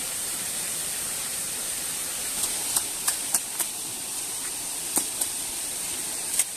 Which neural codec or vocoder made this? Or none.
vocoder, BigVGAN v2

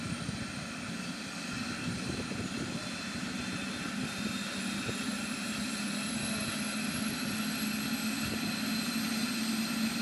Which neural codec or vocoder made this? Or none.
none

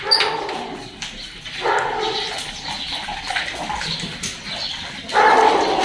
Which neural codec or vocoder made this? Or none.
none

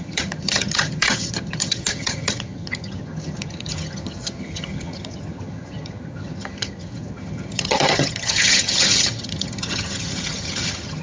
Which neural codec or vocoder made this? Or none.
vocoder, HiFi-GAN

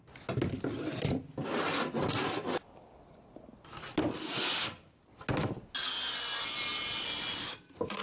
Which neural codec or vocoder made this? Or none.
none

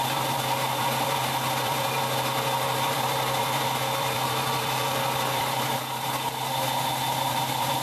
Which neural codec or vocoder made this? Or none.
vocoder, BigVGAN v2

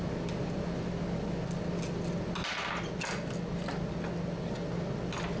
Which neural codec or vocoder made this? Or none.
none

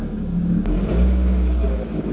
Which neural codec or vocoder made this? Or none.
codec, DAC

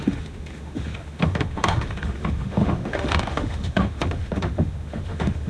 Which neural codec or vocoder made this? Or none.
autoencoder, DAC-VAE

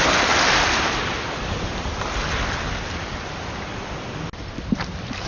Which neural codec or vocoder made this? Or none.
none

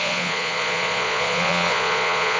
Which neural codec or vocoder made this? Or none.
vocoder, Vocos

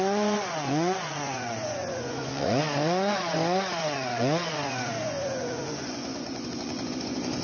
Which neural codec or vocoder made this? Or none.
vocoder, Vocos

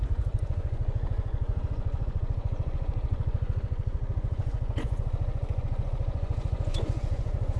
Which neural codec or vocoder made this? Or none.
vocoder, Vocos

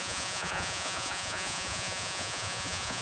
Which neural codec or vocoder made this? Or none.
vocoder, Vocos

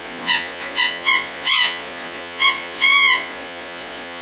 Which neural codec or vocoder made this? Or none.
vocoder, Vocos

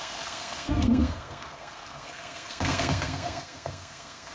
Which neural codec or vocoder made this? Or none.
codec, SNAC